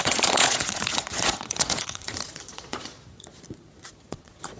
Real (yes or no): no